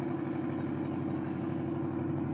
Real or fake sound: real